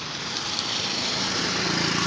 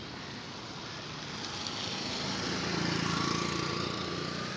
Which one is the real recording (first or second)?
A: second